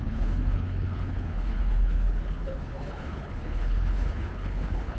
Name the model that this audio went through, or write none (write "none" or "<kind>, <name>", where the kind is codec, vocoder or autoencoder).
codec, HILCodec